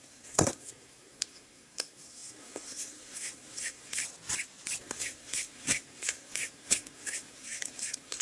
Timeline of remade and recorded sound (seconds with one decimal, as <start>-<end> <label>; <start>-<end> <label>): 0.0-4.0 remade; 4.0-4.8 recorded; 4.8-8.2 remade